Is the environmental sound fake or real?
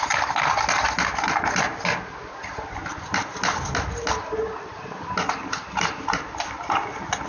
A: real